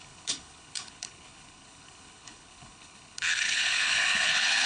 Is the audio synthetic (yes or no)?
yes